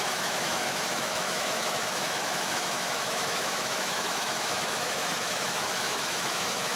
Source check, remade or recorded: remade